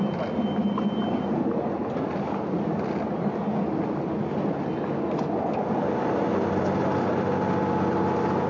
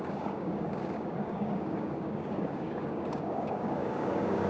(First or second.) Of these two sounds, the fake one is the second